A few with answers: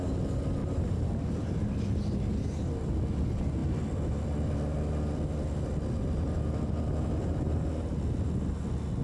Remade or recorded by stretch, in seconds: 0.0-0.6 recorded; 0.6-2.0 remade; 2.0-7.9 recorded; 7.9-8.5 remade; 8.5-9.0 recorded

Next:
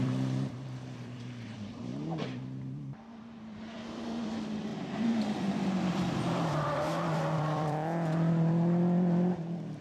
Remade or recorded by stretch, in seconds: 0.0-1.9 remade; 1.9-2.4 recorded; 2.4-9.8 remade

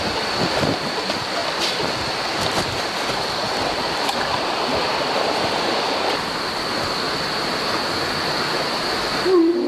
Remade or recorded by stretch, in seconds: 0.0-9.7 recorded

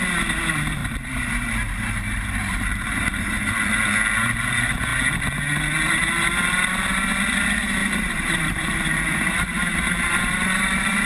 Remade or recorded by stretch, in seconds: 0.0-0.8 recorded; 0.8-3.5 remade; 3.5-7.8 recorded; 7.8-11.1 remade

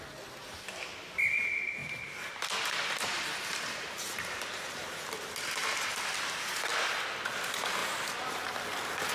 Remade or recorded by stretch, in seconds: 0.0-1.8 recorded; 1.8-5.3 remade; 5.3-7.8 recorded; 7.8-8.4 remade; 8.4-9.1 recorded

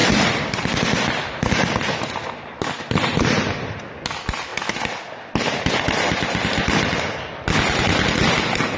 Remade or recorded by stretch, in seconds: 0.0-0.8 remade; 0.8-8.8 recorded

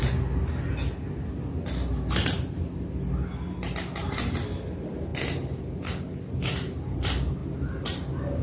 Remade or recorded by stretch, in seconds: 0.0-5.1 recorded; 5.1-5.6 remade; 5.6-8.4 recorded

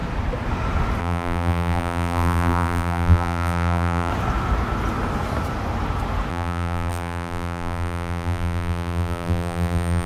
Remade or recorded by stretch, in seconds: 0.0-1.0 recorded; 1.0-4.1 remade; 4.1-6.3 recorded; 6.3-10.1 remade